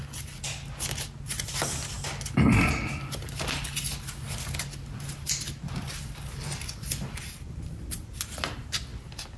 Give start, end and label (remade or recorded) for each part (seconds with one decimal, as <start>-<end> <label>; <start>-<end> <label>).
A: 0.0-9.4 recorded